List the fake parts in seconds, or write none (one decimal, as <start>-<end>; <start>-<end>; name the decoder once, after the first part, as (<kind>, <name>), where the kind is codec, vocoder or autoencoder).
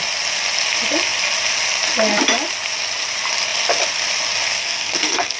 4.6-5.4 (codec, SNAC)